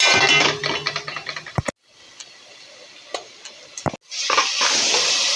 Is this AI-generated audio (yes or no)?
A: no